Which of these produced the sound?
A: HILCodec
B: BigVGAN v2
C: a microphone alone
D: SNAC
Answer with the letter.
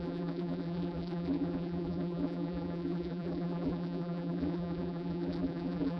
B